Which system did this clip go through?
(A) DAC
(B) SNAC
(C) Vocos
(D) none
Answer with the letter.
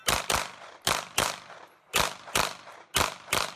D